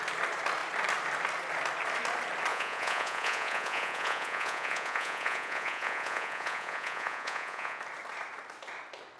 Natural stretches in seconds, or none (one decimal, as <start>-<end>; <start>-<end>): 0.0-2.5; 7.8-9.2